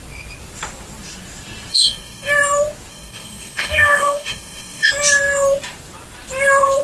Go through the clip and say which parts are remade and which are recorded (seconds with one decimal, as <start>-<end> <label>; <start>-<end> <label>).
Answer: 0.0-1.7 recorded; 1.7-2.3 remade; 2.3-2.9 recorded; 2.9-4.9 remade; 4.9-6.8 recorded